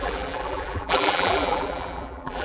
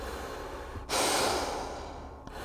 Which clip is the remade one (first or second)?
first